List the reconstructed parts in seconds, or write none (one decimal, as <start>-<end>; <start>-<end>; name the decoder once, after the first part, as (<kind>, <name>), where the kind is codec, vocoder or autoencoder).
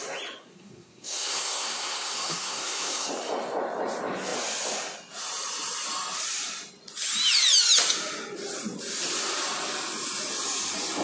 0.4-3.1 (codec, SNAC)